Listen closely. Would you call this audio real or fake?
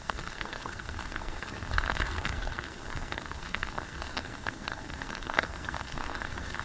fake